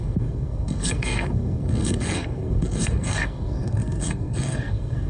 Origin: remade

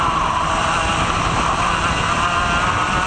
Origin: recorded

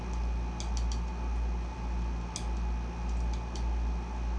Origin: recorded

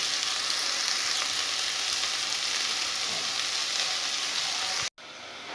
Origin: recorded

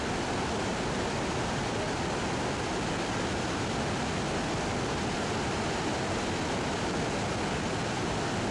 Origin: recorded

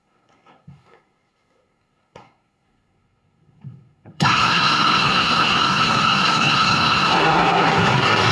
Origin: remade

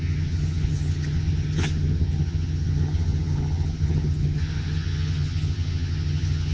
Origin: remade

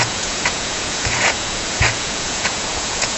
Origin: remade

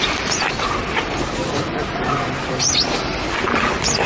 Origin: recorded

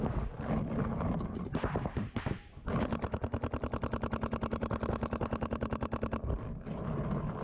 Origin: recorded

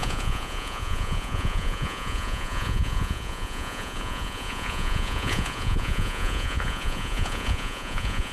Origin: remade